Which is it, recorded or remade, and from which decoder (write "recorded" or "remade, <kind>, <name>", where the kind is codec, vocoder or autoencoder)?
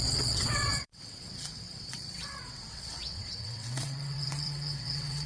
remade, vocoder, WaveNeXt